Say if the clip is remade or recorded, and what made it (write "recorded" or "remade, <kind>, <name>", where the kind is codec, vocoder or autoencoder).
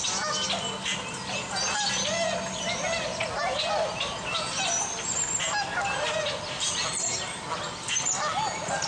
recorded